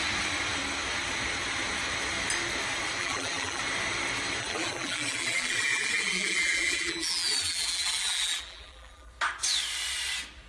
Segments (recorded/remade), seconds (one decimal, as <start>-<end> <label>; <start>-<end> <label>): 0.0-3.0 recorded; 3.0-3.6 remade; 3.6-4.4 recorded; 4.4-9.1 remade; 9.1-10.5 recorded